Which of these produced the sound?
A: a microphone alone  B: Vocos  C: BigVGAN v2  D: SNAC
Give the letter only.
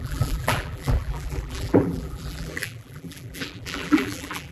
C